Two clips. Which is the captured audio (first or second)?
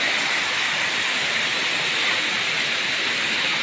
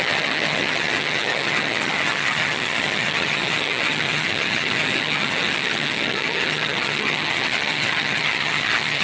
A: first